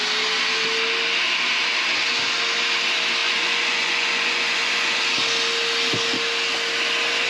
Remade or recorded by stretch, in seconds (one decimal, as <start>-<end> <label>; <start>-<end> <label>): 0.0-3.2 recorded; 3.2-5.0 remade; 5.0-7.3 recorded

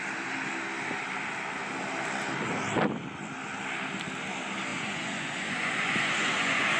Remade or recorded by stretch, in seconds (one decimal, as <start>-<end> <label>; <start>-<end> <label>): 0.0-4.7 recorded; 4.7-6.8 remade